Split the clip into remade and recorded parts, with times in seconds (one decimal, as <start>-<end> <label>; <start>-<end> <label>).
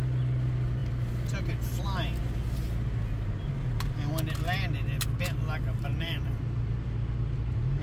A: 0.0-7.8 recorded